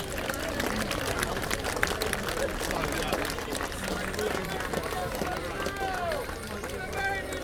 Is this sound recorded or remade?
recorded